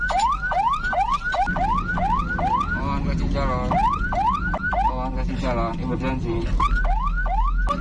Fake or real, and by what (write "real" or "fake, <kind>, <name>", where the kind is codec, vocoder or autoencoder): real